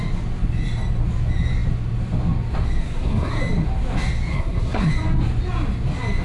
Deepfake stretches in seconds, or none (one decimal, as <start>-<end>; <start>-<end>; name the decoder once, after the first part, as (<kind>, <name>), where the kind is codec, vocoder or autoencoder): 2.8-3.4 (codec, SNAC); 4.3-4.9